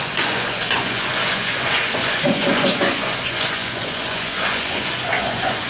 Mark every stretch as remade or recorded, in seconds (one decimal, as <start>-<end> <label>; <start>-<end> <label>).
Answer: 0.0-5.7 remade

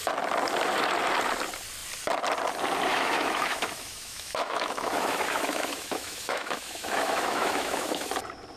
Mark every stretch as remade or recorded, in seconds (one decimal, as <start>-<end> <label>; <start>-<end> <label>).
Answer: 0.0-2.9 recorded; 2.9-8.1 remade; 8.1-8.6 recorded

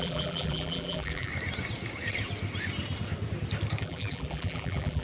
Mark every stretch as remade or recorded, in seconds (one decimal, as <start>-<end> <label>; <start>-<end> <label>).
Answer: 0.0-1.3 remade; 1.3-3.8 recorded; 3.8-5.0 remade

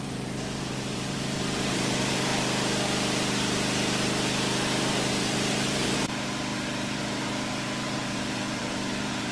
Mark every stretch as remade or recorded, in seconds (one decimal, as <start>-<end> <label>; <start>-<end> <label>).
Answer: 0.0-2.3 remade; 2.3-4.8 recorded; 4.8-9.3 remade